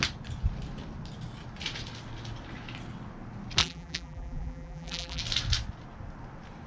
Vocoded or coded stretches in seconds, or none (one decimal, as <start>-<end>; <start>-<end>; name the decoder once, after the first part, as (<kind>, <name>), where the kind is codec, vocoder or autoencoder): 3.6-5.2 (vocoder, BigVGAN v2)